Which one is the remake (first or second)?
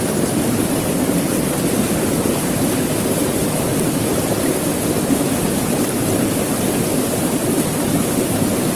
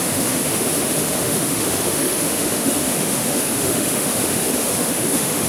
second